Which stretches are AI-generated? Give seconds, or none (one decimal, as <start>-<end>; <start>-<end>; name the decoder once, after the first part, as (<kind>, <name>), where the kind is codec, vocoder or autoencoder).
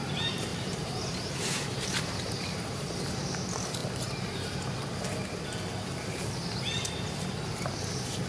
0.5-3.1 (vocoder, BigVGAN v2)